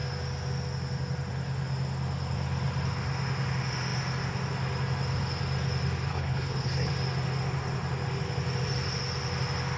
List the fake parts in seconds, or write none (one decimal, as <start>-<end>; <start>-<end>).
6.1-6.9